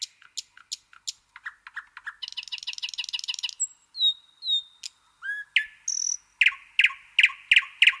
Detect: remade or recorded recorded